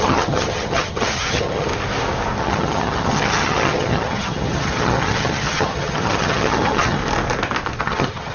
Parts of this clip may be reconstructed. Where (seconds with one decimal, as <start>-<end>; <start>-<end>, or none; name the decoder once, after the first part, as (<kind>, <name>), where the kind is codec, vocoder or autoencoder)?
0.0-1.7 (vocoder, HiFi-GAN); 2.4-7.0; 7.8-8.3